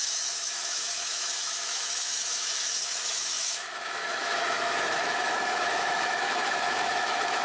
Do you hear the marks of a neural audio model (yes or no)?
yes